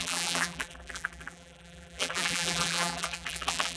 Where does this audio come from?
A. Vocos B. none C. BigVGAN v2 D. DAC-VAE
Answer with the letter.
C